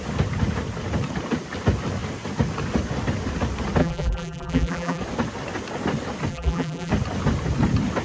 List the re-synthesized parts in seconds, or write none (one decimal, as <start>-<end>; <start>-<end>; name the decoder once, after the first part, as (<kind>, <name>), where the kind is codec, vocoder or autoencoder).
3.8-5.0 (vocoder, BigVGAN v2); 6.3-6.9